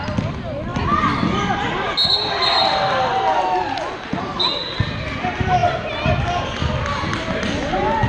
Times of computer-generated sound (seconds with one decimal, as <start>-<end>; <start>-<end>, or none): none